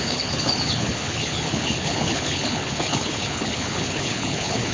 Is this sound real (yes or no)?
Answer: no